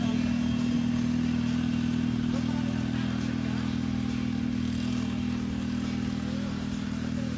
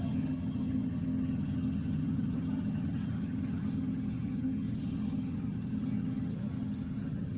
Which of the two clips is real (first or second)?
first